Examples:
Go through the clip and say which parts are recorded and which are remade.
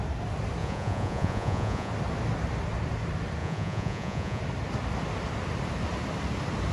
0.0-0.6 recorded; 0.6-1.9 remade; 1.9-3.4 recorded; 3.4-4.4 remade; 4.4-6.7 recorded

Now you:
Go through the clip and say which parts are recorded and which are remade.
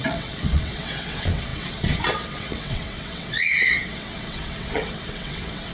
0.0-5.7 remade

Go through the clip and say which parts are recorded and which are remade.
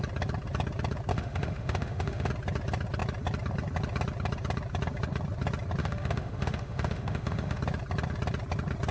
0.0-1.1 recorded; 1.1-2.3 remade; 2.3-5.8 recorded; 5.8-7.6 remade; 7.6-8.9 recorded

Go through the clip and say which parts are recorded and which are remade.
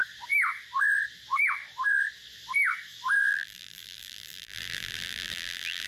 0.0-3.3 recorded; 3.3-5.9 remade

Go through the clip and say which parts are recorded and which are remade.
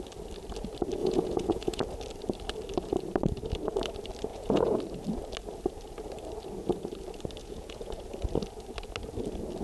0.0-1.0 recorded; 1.0-1.8 remade; 1.8-4.3 recorded; 4.3-4.8 remade; 4.8-7.4 recorded; 7.4-8.0 remade; 8.0-9.6 recorded